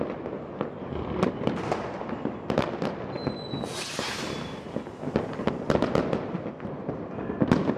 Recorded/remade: recorded